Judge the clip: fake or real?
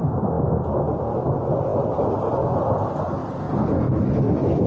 real